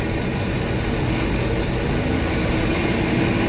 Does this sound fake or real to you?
real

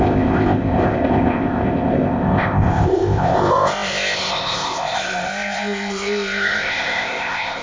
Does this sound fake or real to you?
fake